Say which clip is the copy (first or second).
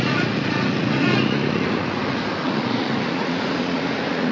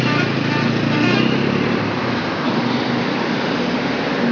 first